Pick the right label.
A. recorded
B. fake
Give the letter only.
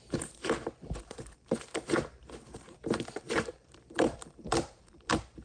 B